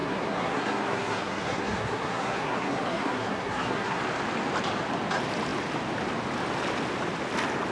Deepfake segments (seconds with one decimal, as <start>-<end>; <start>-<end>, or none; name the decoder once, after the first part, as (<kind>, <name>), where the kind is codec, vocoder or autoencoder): 0.0-4.0 (codec, SNAC)